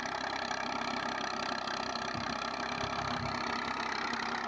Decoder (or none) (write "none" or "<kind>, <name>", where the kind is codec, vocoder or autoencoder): none